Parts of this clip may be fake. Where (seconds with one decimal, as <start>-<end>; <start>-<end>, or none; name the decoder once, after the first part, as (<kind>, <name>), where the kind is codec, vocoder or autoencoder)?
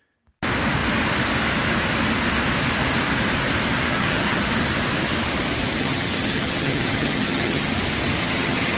3.9-4.4 (vocoder, HiFi-GAN); 5.8-7.7; 8.2-8.8